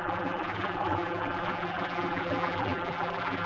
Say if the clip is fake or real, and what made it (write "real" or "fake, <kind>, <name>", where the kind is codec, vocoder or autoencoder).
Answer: fake, vocoder, BigVGAN v2